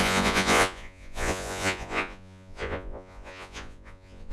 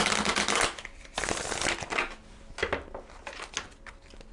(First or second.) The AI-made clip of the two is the first